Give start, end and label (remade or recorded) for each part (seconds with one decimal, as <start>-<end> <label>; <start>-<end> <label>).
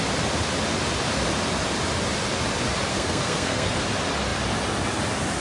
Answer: 0.0-2.9 recorded; 2.9-3.8 remade; 3.8-5.4 recorded